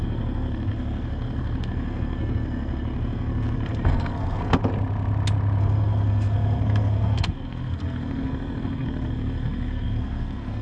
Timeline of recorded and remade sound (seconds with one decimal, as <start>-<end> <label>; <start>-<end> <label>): 0.0-4.6 remade; 4.6-5.6 recorded; 5.6-10.6 remade